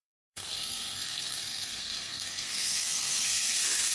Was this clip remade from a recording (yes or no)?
yes